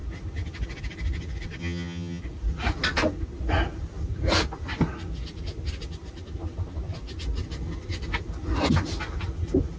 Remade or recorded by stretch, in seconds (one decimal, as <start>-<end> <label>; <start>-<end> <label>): 0.0-1.6 recorded; 1.6-2.2 remade; 2.2-9.8 recorded